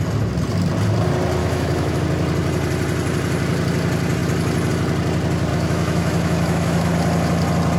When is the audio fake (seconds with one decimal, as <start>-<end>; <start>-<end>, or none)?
1.4-2.0; 5.5-6.9